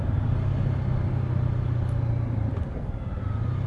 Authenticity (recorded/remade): recorded